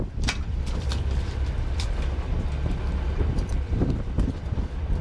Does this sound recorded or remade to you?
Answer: remade